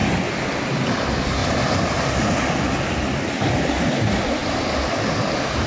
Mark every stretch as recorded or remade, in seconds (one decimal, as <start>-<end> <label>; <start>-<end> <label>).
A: 0.0-5.7 recorded

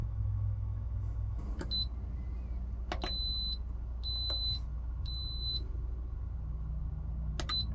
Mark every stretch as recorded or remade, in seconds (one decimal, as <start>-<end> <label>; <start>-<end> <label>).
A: 0.0-1.4 remade; 1.4-7.7 recorded

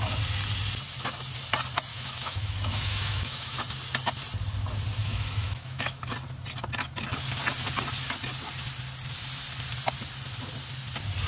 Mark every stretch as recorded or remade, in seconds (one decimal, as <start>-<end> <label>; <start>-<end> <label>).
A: 0.0-1.9 recorded; 1.9-3.6 remade; 3.6-5.0 recorded; 5.0-6.1 remade; 6.1-11.3 recorded

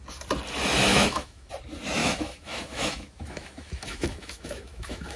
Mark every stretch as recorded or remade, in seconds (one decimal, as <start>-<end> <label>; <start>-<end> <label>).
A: 0.0-0.9 recorded; 0.9-1.5 remade; 1.5-2.0 recorded; 2.0-5.2 remade